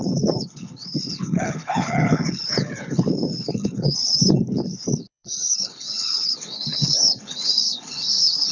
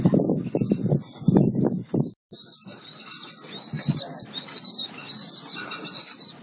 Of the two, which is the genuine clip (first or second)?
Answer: second